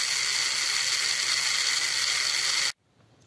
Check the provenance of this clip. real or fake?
real